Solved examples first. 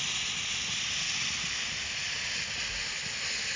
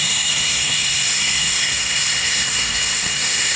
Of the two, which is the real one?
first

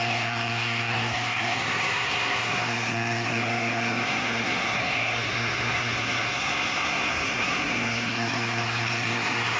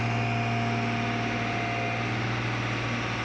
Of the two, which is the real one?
second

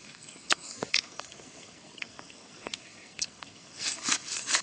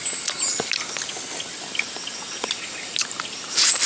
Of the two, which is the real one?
second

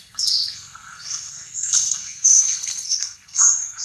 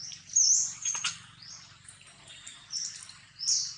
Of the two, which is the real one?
second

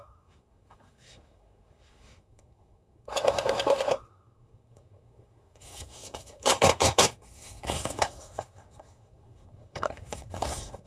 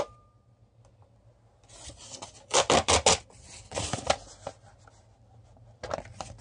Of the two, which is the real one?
second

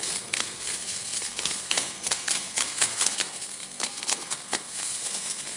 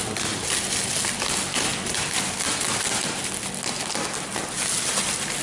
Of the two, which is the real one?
second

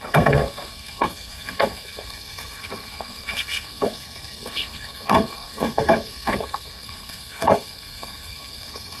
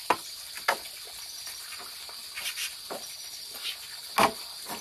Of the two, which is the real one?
second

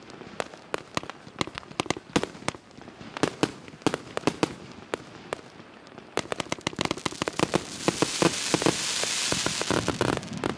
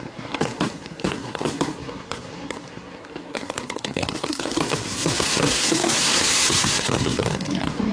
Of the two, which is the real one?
first